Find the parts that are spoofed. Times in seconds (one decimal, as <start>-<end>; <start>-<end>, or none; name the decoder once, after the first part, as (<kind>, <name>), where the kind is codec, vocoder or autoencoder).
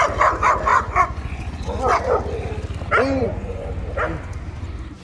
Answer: 0.7-1.8 (vocoder, Vocos); 3.2-3.7